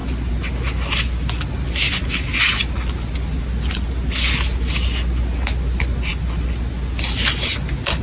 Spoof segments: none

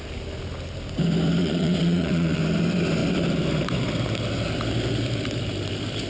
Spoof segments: 1.4-2.4 (vocoder, WaveNeXt)